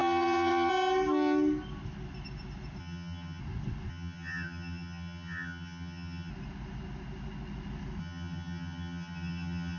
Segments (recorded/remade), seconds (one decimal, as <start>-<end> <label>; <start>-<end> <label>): 0.0-0.7 remade; 0.7-2.8 recorded; 2.8-3.4 remade; 3.4-3.9 recorded; 3.9-6.3 remade; 6.3-8.0 recorded; 8.0-9.8 remade

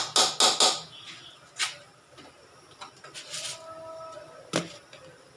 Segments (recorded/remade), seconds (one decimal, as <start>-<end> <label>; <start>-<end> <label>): 0.0-5.4 recorded

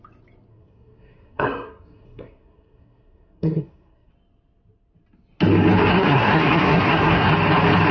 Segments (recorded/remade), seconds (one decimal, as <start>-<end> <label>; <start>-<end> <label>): 0.0-0.5 recorded; 0.5-4.1 remade; 4.1-5.9 recorded; 5.9-7.3 remade; 7.3-7.9 recorded

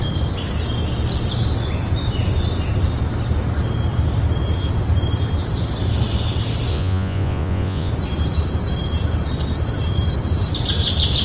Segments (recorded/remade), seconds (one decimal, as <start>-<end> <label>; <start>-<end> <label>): 0.0-6.7 recorded; 6.7-7.9 remade; 7.9-11.2 recorded

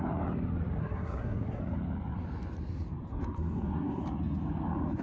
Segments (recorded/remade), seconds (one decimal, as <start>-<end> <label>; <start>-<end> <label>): 0.0-0.8 recorded; 0.8-1.6 remade; 1.6-3.1 recorded; 3.1-4.0 remade; 4.0-5.0 recorded

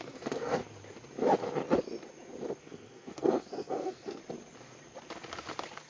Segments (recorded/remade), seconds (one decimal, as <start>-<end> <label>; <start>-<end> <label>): 0.0-0.6 remade; 0.6-2.6 recorded; 2.6-4.2 remade; 4.2-5.9 recorded

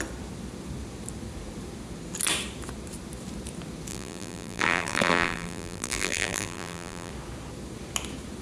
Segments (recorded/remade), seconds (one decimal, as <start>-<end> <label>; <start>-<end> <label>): 0.0-3.9 recorded; 3.9-7.1 remade; 7.1-8.4 recorded